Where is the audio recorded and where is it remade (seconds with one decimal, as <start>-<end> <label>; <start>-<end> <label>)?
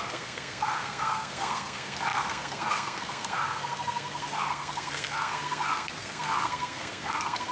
0.0-7.5 remade